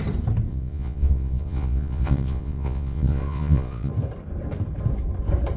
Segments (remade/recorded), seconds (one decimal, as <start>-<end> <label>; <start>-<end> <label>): 0.0-0.5 recorded; 0.5-3.9 remade; 3.9-5.6 recorded